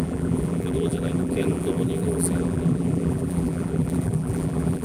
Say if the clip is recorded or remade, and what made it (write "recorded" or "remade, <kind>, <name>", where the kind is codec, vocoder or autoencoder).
remade, vocoder, BigVGAN v2